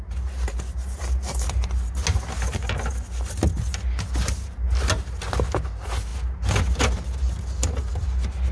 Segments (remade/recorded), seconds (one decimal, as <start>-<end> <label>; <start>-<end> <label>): 0.0-8.5 recorded